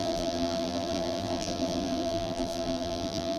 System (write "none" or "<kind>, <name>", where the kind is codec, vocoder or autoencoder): vocoder, BigVGAN v2